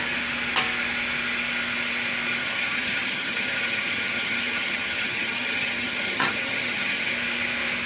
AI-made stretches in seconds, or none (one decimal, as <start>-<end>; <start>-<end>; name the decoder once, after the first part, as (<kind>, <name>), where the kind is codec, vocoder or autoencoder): 2.4-7.1 (vocoder, HiFi-GAN)